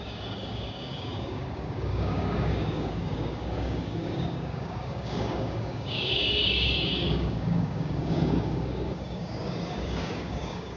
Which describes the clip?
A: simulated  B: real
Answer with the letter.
A